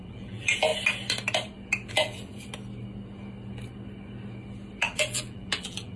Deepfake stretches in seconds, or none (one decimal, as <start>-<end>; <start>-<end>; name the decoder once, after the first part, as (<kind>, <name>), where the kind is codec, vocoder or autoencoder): 0.0-0.7 (vocoder, BigVGAN v2); 1.9-2.3; 4.8-6.0